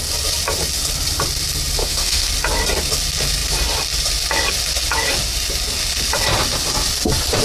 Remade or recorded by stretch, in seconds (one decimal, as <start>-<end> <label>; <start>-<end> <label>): 0.0-1.8 recorded; 1.8-2.3 remade; 2.3-7.4 recorded